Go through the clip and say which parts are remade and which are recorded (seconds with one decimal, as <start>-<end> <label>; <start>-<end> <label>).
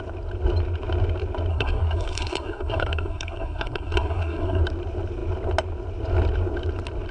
0.0-1.5 recorded; 1.5-4.6 remade; 4.6-7.1 recorded